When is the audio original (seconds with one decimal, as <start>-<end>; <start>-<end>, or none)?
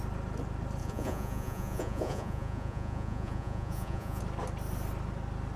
0.0-0.8; 4.2-5.6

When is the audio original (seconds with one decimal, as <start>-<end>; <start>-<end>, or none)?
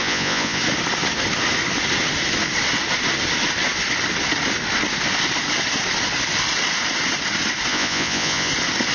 0.6-7.7; 8.5-8.9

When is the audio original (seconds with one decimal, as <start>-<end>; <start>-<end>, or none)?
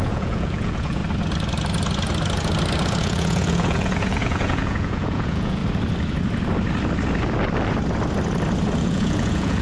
1.0-3.0; 5.6-8.8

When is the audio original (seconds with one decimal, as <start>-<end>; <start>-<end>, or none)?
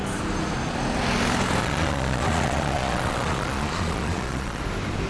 0.0-1.6; 4.6-5.1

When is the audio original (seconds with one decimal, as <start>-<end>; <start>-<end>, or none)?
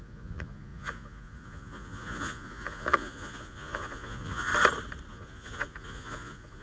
4.5-5.1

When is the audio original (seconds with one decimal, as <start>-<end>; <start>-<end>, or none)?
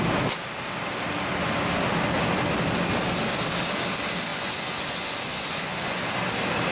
0.0-4.3; 6.0-6.7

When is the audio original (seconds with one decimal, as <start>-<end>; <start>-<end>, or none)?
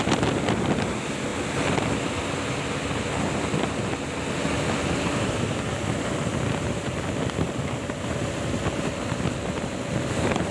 0.0-10.5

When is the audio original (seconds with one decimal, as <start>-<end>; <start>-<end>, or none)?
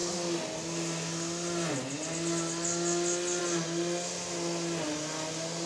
0.0-5.7